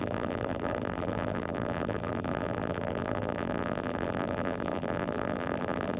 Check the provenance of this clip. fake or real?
fake